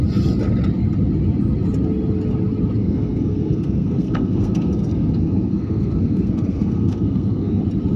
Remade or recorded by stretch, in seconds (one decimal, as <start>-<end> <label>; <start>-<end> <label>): 0.0-2.8 recorded; 2.8-7.6 remade; 7.6-8.0 recorded